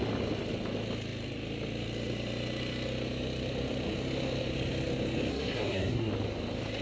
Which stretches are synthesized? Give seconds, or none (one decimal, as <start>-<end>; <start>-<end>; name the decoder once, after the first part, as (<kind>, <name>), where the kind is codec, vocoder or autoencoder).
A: 5.3-6.1 (codec, SNAC)